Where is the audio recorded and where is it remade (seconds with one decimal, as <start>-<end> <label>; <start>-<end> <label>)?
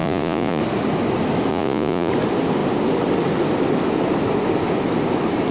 0.0-0.6 remade; 0.6-1.5 recorded; 1.5-2.1 remade; 2.1-5.5 recorded